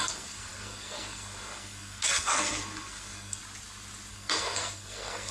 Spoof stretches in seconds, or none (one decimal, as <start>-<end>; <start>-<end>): 0.0-3.4; 4.1-5.3